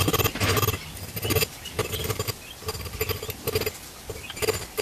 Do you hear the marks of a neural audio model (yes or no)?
no